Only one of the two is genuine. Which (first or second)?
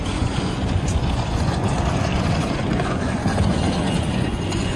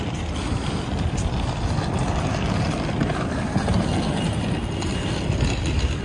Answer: second